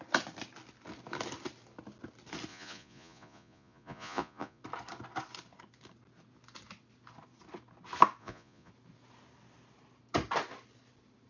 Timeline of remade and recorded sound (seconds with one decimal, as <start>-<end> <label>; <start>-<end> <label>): 0.0-2.5 recorded; 2.5-4.6 remade; 4.6-8.2 recorded; 8.2-8.7 remade; 8.7-11.3 recorded